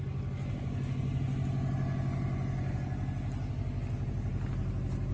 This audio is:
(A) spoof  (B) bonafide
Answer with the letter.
B